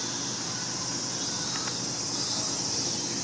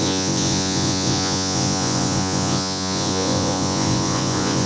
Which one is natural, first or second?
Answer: first